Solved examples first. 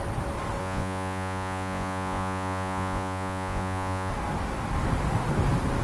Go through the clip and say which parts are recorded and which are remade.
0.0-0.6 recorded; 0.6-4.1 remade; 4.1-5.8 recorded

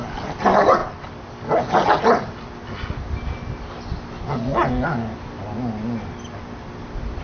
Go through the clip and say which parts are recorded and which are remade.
0.0-7.2 recorded

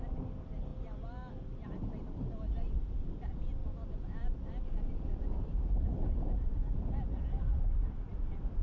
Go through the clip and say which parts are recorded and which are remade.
0.0-3.6 recorded; 3.6-7.4 remade; 7.4-8.6 recorded

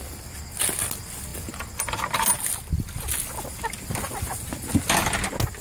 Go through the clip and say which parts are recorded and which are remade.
0.0-5.6 recorded

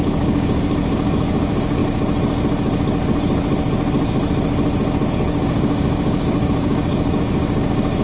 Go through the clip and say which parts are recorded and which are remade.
0.0-1.8 remade; 1.8-5.1 recorded; 5.1-8.0 remade

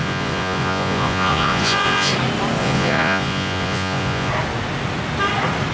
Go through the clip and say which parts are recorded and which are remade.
0.0-2.1 remade; 2.1-2.6 recorded; 2.6-4.3 remade; 4.3-5.7 recorded